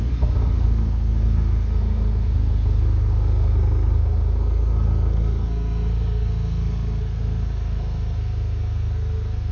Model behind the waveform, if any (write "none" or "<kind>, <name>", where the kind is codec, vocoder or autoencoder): codec, SNAC